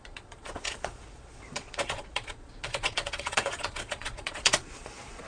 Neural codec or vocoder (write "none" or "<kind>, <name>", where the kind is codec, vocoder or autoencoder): vocoder, Vocos